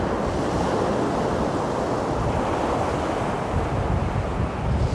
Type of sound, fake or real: real